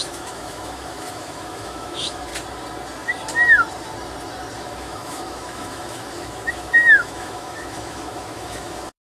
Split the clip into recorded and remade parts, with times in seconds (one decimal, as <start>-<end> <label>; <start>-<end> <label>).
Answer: 0.0-2.3 remade; 2.3-4.6 recorded; 4.6-9.1 remade